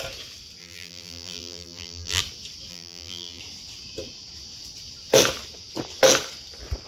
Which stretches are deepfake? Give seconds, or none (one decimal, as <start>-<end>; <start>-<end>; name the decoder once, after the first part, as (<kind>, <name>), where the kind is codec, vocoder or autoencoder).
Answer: 0.6-2.2 (vocoder, BigVGAN v2); 2.7-3.4